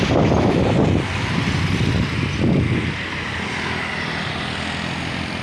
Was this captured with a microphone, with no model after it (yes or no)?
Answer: yes